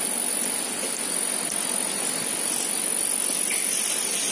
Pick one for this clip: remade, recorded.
recorded